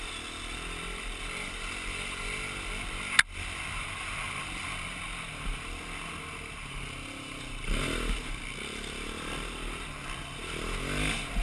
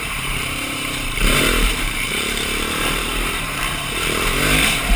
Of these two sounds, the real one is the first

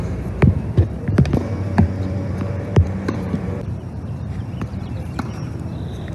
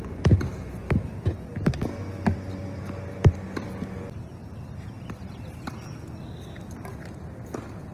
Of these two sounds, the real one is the second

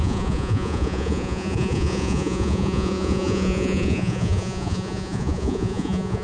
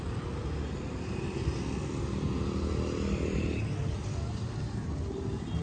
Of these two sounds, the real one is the second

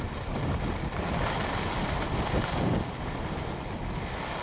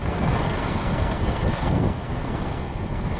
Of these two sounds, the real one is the first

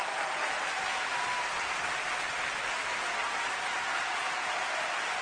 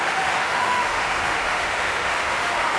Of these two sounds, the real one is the first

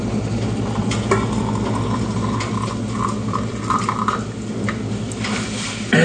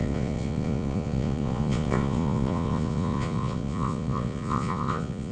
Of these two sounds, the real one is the first